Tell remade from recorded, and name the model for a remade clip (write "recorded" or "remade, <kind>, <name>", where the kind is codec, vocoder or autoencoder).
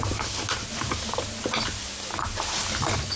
recorded